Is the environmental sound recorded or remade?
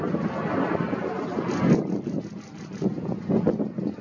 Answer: recorded